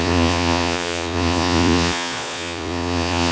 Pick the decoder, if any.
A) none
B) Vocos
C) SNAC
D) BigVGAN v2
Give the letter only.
B